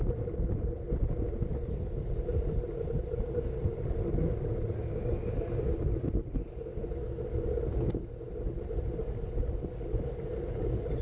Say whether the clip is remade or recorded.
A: recorded